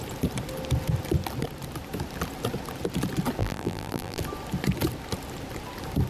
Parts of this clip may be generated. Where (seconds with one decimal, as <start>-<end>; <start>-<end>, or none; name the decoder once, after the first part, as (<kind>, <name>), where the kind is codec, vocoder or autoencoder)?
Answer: 3.4-4.2 (vocoder, BigVGAN v2)